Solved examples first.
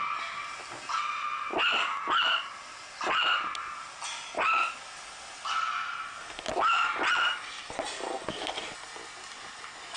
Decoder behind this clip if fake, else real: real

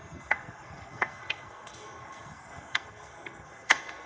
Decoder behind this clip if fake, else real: fake, codec, SNAC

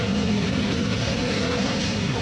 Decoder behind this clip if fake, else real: fake, codec, SNAC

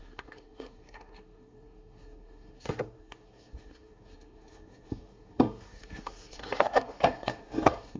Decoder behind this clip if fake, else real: fake, codec, SNAC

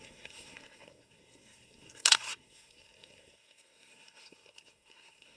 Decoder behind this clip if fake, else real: fake, codec, SNAC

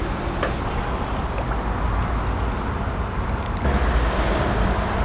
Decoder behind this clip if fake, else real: real